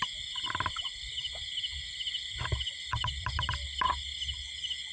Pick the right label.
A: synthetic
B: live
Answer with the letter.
B